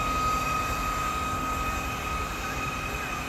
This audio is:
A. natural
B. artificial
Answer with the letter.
A